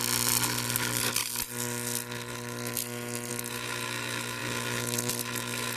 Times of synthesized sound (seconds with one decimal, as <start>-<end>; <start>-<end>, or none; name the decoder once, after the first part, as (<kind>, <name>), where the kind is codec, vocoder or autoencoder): none

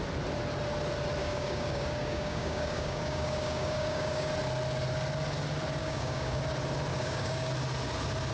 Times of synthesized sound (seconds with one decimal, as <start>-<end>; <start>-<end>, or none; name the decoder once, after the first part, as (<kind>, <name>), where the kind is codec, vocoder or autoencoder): 1.2-4.3 (codec, DAC); 5.8-6.4; 6.9-7.5

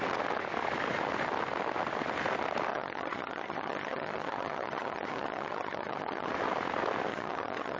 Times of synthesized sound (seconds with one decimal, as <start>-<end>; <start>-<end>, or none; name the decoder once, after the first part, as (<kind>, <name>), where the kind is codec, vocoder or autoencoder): 2.7-6.3 (vocoder, HiFi-GAN); 7.1-7.8

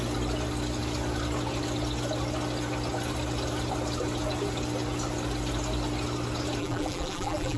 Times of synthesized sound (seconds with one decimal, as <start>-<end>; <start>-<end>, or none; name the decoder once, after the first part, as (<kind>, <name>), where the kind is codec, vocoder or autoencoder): 6.6-7.6 (vocoder, BigVGAN v2)

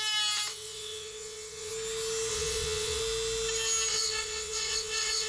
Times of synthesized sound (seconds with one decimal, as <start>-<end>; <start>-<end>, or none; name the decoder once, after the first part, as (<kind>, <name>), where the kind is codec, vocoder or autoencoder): 0.5-1.7 (vocoder, WaveNeXt); 2.3-3.0; 3.9-5.3

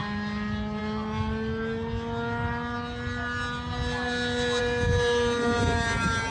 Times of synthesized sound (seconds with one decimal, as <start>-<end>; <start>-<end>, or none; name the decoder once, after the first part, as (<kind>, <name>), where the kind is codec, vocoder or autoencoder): none

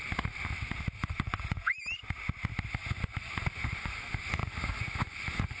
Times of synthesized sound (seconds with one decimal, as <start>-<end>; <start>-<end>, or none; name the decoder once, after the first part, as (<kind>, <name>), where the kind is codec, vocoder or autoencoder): 1.0-1.7 (vocoder, Vocos); 2.8-4.0; 4.4-5.6